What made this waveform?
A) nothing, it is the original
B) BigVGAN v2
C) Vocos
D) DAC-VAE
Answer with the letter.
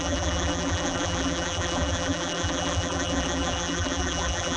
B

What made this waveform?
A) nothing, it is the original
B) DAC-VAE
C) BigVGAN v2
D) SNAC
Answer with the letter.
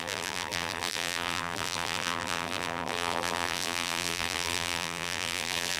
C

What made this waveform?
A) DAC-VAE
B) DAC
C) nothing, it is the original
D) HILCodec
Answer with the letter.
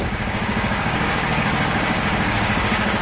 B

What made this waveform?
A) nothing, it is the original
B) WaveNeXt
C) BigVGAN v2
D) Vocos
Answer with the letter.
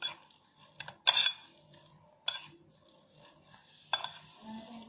A